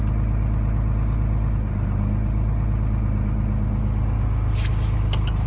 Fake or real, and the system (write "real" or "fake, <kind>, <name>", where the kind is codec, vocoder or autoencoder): real